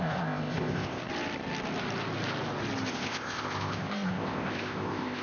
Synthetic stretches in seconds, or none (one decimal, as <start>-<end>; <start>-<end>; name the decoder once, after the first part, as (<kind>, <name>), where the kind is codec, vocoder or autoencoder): 0.0-1.0 (codec, ZipCodec); 2.9-5.2